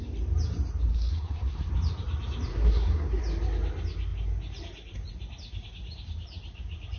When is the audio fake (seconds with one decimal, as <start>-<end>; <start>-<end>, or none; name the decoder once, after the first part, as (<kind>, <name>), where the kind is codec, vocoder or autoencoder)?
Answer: 0.9-1.7 (codec, SNAC); 2.5-3.2